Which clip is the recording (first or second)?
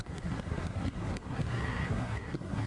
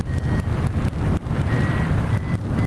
second